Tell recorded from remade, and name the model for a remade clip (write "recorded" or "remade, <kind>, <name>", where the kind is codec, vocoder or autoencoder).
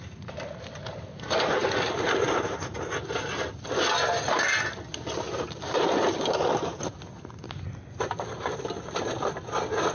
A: recorded